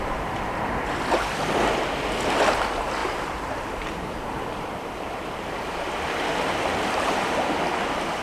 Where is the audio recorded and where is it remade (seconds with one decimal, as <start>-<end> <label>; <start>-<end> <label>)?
0.0-3.0 recorded; 3.0-7.5 remade; 7.5-8.2 recorded